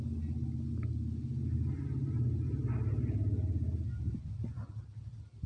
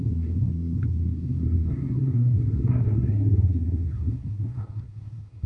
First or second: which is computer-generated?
second